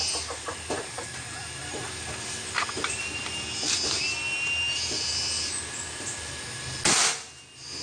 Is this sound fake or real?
real